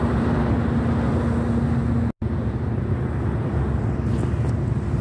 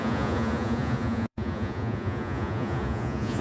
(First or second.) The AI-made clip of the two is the second